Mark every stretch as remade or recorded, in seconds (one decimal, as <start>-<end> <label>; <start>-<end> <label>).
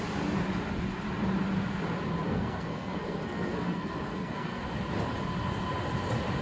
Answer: 0.0-2.3 recorded; 2.3-4.6 remade; 4.6-6.4 recorded